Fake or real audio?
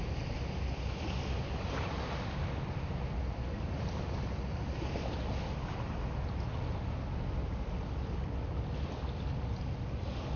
real